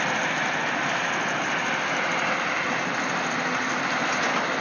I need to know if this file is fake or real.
real